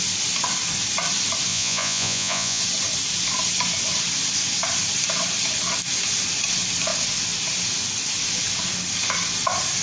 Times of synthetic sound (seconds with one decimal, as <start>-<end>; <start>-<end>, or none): 1.5-2.6